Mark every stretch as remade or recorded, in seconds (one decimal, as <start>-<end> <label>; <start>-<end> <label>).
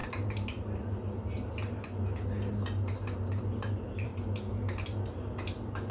0.0-3.5 recorded; 3.5-4.1 remade; 4.1-5.9 recorded